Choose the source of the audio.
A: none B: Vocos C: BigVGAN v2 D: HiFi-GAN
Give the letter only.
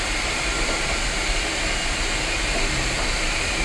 C